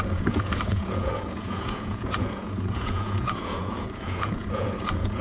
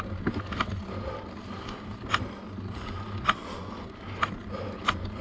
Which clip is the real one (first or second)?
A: second